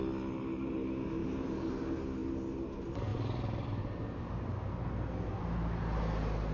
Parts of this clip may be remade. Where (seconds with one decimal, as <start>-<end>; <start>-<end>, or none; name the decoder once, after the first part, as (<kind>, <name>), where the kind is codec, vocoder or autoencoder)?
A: 4.7-5.4 (codec, SNAC)